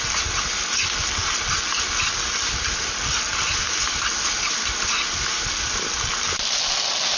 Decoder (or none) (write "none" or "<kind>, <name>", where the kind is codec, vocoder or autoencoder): none